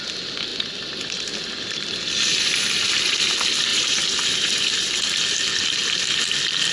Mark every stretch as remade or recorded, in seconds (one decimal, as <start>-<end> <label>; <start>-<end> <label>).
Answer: 0.0-0.5 recorded; 0.5-1.0 remade; 1.0-3.7 recorded; 3.7-5.1 remade; 5.1-6.7 recorded

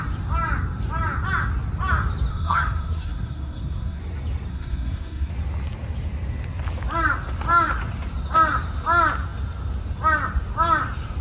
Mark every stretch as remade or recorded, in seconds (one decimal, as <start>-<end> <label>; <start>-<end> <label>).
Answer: 0.0-2.3 recorded; 2.3-4.0 remade; 4.0-4.5 recorded; 4.5-5.3 remade; 5.3-11.2 recorded

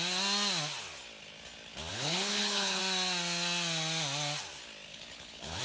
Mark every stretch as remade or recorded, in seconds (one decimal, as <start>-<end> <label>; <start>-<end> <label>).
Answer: 0.0-1.9 recorded; 1.9-2.8 remade; 2.8-4.9 recorded; 4.9-5.6 remade

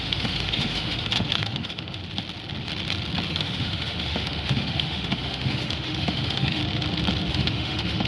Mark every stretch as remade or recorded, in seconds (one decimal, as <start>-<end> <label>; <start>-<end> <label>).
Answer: 0.0-2.0 remade; 2.0-3.3 recorded; 3.3-6.6 remade; 6.6-7.3 recorded; 7.3-8.1 remade

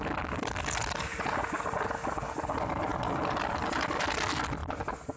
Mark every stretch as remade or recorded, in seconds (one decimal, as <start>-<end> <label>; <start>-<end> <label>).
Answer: 0.0-5.2 recorded

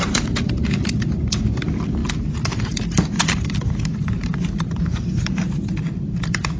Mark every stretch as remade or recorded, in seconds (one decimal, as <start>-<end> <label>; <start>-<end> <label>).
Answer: 0.0-6.6 remade